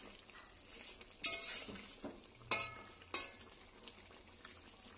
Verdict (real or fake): real